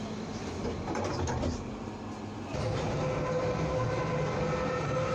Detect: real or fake real